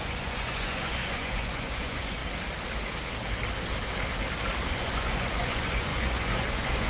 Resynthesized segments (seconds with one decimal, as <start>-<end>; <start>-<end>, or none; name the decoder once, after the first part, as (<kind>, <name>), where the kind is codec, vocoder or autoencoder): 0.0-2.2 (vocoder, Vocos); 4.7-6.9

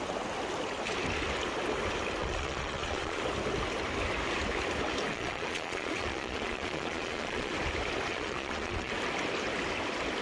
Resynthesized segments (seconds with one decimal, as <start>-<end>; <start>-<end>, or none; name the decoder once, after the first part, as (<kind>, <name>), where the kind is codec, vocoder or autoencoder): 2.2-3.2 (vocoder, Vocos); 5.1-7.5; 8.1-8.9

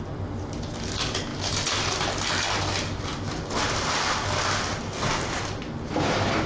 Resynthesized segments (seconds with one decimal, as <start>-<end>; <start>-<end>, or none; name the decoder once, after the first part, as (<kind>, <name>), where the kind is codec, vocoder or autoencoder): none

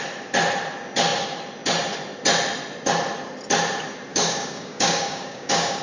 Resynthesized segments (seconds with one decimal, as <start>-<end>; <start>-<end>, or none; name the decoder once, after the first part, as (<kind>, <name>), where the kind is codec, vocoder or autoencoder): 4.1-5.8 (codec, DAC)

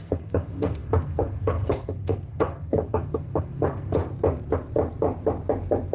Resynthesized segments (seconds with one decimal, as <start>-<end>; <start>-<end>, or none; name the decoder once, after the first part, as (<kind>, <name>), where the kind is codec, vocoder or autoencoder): 0.0-4.0 (codec, SNAC)